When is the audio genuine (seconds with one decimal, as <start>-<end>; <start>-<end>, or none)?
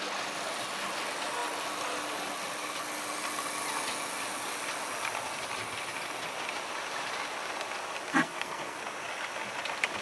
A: 0.0-8.1; 8.8-10.0